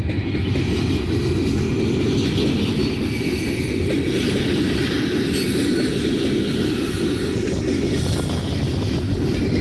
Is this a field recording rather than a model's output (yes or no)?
yes